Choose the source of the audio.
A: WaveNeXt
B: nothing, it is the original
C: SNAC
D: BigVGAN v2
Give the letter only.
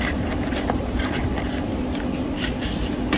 B